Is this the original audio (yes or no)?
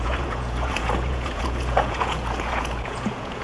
no